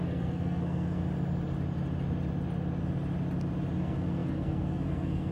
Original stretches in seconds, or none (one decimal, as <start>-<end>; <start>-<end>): 1.0-3.8